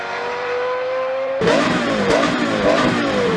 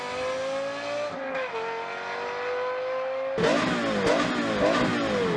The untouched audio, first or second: second